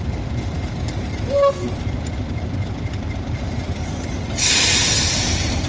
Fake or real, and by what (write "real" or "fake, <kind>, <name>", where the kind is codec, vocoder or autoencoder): fake, vocoder, BigVGAN v2